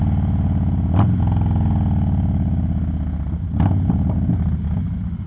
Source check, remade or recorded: recorded